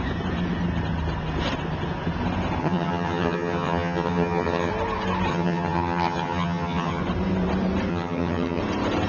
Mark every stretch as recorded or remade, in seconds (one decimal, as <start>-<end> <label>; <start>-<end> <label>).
0.0-2.6 recorded; 2.6-4.7 remade; 4.7-5.3 recorded; 5.3-7.0 remade; 7.0-7.9 recorded; 7.9-8.6 remade; 8.6-9.1 recorded